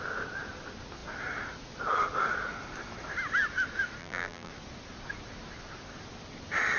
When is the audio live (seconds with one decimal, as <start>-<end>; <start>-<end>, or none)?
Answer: 0.0-4.0; 4.5-6.8